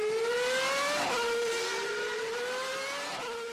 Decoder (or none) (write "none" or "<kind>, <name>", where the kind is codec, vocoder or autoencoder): none